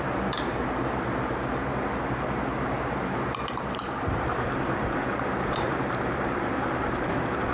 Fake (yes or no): yes